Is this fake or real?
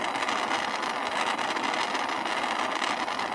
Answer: real